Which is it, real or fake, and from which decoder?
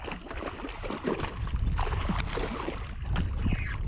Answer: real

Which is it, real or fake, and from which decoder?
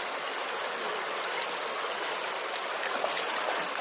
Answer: real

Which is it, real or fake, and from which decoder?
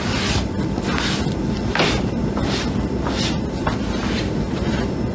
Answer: real